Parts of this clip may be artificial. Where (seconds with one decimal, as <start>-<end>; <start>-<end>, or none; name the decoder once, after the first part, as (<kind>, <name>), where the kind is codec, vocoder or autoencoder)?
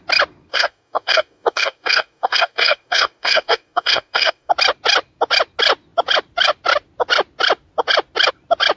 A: 0.5-4.5 (codec, DAC)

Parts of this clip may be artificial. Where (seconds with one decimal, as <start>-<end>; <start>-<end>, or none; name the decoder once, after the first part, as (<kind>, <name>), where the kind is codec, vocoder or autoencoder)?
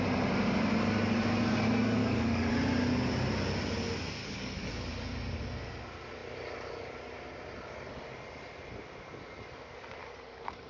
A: 2.0-2.5 (codec, DAC); 4.2-5.0; 10.0-10.7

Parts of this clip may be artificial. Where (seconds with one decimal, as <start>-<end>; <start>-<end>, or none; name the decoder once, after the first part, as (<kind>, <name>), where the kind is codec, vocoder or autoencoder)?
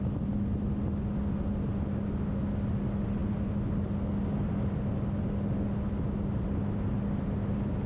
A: none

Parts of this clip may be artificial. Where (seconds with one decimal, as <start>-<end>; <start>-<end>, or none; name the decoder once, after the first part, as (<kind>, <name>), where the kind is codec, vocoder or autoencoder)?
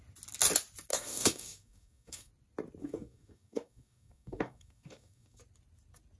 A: 0.9-2.3 (codec, DAC); 2.8-5.4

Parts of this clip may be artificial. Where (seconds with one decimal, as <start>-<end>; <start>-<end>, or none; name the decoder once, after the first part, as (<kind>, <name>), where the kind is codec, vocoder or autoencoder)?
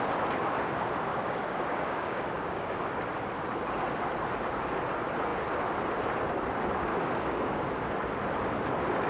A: 1.1-3.0 (codec, DAC); 6.9-7.7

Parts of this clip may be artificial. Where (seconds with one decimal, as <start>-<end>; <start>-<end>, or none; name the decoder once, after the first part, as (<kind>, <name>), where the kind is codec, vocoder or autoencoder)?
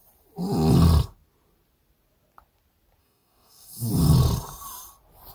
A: 3.0-3.9 (codec, DAC)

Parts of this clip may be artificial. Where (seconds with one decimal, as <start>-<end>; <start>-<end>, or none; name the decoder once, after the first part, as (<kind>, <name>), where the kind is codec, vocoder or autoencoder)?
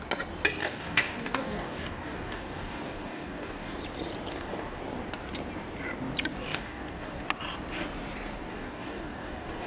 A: 0.6-3.8 (codec, DAC); 4.3-4.8; 6.4-7.2; 8.5-9.7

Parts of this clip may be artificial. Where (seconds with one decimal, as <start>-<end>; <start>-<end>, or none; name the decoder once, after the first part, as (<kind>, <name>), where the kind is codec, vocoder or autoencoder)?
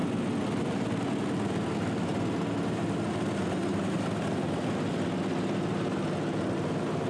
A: none